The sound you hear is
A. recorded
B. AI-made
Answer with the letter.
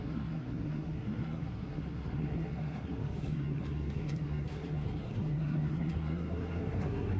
B